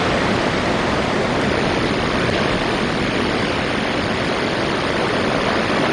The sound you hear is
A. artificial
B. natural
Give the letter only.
B